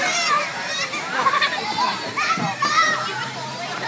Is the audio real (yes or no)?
no